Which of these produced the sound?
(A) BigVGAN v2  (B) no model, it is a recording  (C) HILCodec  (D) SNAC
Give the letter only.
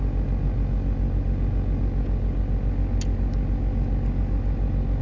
B